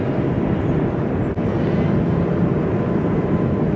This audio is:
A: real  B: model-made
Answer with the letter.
A